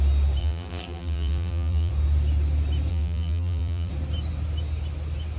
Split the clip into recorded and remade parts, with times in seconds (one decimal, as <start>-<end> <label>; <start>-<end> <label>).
0.0-0.4 recorded; 0.4-1.9 remade; 1.9-2.9 recorded; 2.9-3.9 remade; 3.9-5.4 recorded